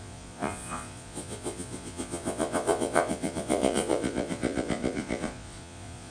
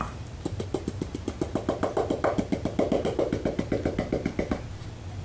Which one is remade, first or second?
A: first